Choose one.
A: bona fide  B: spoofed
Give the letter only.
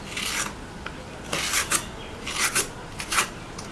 A